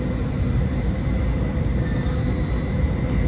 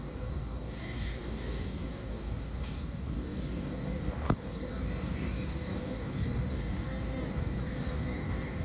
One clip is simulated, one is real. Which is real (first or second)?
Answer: first